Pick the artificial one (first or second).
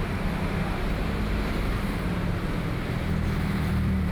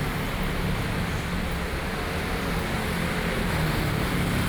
first